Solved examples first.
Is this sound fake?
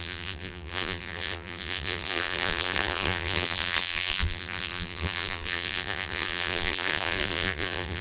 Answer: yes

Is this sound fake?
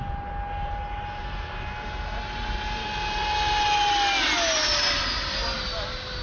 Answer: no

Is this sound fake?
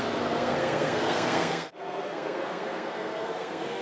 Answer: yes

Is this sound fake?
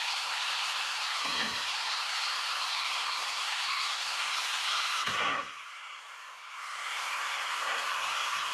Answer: yes